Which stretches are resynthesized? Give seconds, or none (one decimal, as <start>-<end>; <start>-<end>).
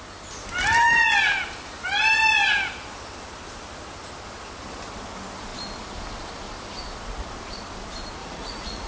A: 8.2-8.9